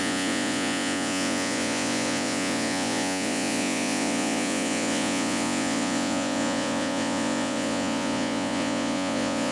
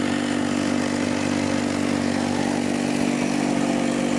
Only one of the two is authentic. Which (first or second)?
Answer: second